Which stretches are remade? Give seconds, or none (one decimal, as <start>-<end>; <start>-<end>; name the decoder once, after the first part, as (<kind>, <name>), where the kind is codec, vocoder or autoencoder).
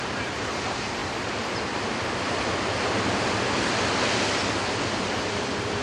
none